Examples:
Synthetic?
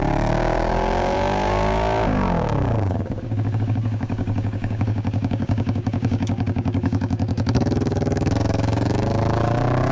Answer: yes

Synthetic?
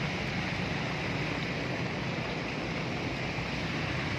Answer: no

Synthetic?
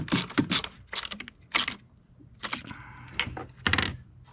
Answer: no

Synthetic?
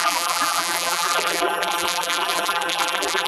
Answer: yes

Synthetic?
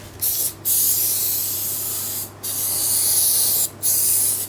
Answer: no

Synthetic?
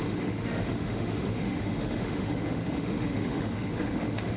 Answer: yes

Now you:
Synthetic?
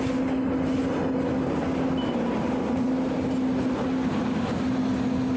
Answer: no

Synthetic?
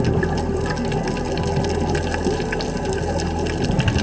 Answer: no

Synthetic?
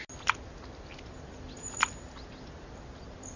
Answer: no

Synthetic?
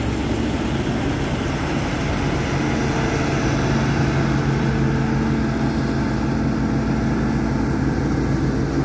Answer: no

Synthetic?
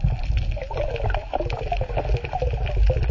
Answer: no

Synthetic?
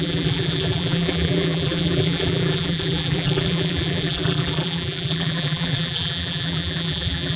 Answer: yes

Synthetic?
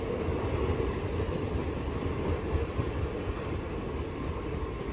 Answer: no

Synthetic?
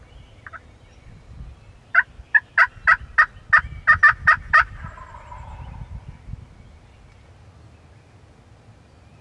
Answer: no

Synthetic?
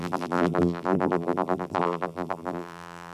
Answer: yes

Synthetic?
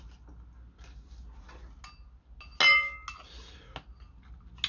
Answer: no